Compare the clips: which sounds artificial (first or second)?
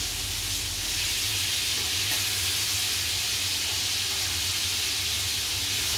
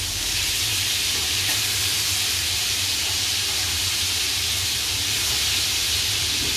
second